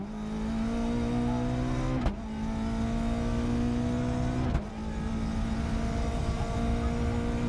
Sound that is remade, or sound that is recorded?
recorded